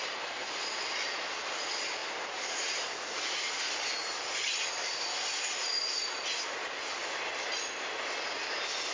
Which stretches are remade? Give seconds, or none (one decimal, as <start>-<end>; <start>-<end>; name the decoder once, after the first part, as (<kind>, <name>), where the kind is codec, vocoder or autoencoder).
none